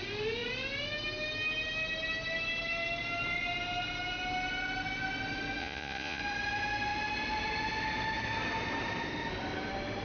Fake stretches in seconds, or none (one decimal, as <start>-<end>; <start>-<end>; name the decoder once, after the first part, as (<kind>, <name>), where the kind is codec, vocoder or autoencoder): 5.6-6.2 (vocoder, Vocos)